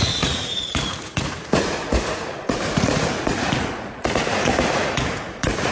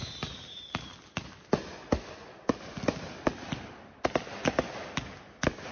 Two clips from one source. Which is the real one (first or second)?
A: second